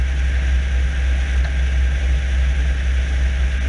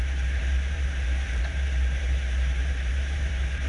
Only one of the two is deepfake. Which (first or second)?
second